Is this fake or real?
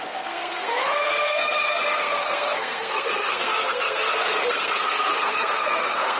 fake